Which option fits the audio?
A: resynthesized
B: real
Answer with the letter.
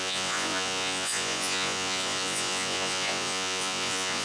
A